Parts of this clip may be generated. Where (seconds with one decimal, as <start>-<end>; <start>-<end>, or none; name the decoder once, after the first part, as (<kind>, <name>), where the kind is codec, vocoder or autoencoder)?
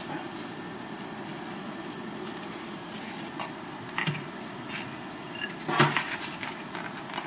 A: none